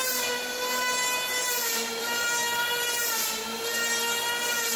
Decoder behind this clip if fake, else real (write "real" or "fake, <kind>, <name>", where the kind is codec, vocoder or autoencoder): fake, vocoder, BigVGAN v2